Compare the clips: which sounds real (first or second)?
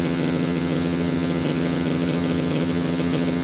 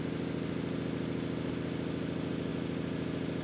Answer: second